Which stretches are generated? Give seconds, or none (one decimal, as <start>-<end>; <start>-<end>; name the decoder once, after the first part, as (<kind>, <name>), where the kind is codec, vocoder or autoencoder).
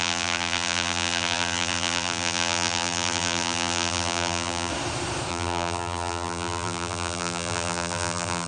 0.0-4.7 (vocoder, BigVGAN v2); 5.3-8.5